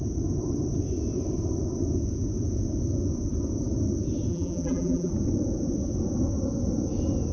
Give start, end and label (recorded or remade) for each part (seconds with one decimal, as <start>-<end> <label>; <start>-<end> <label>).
0.0-4.3 recorded; 4.3-5.1 remade; 5.1-7.3 recorded